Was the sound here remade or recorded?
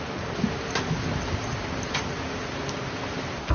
recorded